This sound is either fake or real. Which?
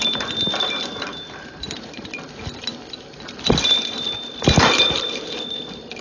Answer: real